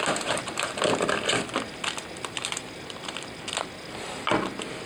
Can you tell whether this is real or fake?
real